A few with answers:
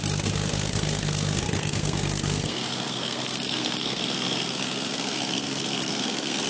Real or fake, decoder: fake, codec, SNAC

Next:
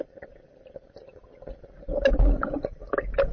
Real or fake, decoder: real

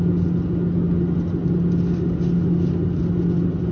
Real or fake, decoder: real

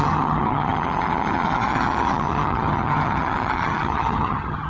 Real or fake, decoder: fake, vocoder, HiFi-GAN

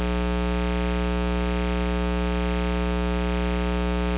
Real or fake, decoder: real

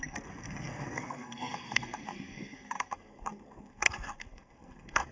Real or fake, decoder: fake, codec, SNAC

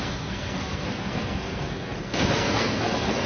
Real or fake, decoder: fake, codec, SNAC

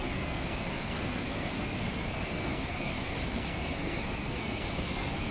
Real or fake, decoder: fake, codec, SNAC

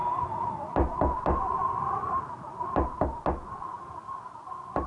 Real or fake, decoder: real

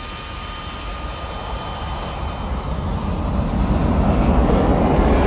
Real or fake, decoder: real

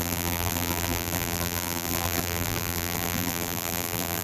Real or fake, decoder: fake, vocoder, BigVGAN v2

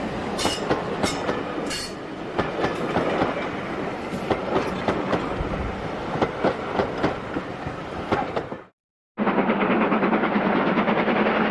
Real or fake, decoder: real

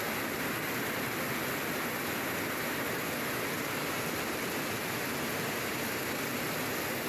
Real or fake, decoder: real